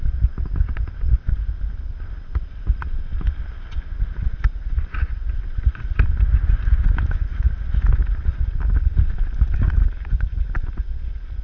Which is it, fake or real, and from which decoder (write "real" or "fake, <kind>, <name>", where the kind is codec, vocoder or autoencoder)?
real